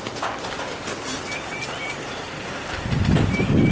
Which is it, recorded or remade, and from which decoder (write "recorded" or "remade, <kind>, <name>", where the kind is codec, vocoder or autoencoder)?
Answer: recorded